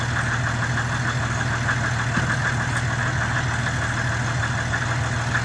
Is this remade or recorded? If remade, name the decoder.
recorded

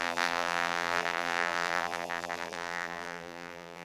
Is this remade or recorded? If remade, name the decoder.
remade, vocoder, BigVGAN v2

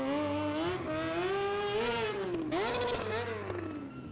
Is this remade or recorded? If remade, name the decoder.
recorded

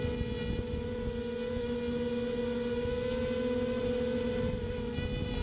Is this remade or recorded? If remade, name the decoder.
recorded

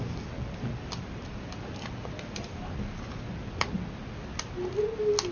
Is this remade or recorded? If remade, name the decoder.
recorded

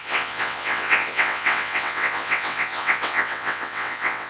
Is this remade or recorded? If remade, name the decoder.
remade, vocoder, WaveNeXt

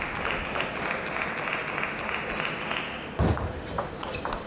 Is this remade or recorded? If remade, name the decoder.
recorded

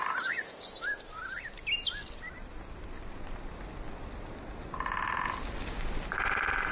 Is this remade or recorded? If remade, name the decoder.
recorded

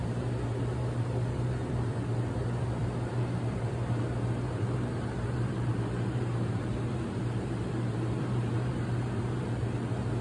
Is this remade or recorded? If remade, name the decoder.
remade, vocoder, BigVGAN v2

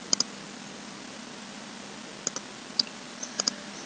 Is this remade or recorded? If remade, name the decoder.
recorded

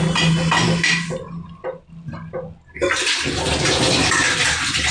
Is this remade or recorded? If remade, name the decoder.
recorded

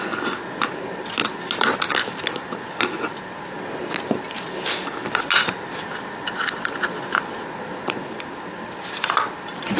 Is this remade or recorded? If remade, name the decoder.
recorded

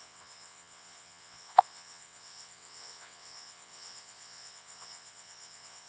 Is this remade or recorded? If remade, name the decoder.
remade, vocoder, WaveNeXt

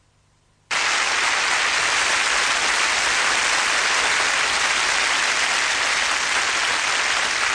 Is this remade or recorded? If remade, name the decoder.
recorded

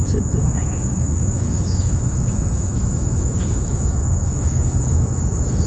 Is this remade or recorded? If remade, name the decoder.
remade, autoencoder, DAC-VAE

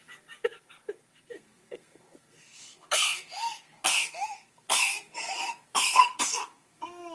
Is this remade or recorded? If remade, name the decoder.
remade, codec, SNAC